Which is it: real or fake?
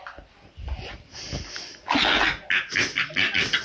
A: real